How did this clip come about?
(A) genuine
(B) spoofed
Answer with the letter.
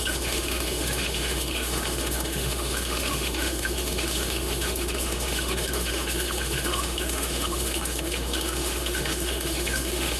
B